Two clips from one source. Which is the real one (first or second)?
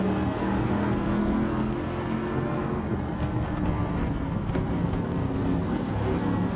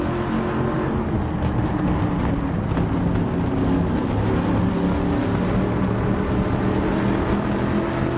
second